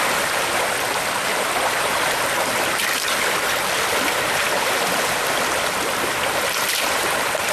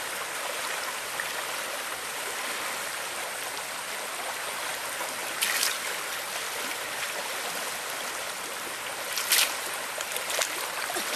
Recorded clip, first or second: second